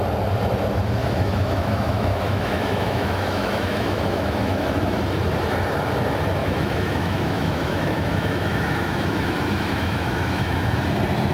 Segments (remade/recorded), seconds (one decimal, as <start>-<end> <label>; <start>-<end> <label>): 0.0-1.0 recorded; 1.0-5.0 remade; 5.0-6.4 recorded; 6.4-10.8 remade; 10.8-11.3 recorded